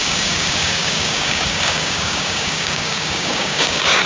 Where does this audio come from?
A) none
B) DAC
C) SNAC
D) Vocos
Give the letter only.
B